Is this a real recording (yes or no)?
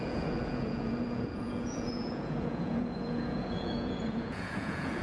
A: no